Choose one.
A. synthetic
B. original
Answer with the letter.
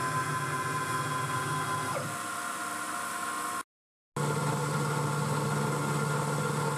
B